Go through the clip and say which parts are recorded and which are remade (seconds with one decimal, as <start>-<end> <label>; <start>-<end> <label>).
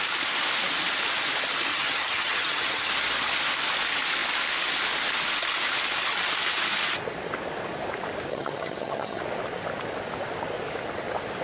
0.0-1.7 recorded; 1.7-2.9 remade; 2.9-8.3 recorded; 8.3-9.2 remade; 9.2-11.4 recorded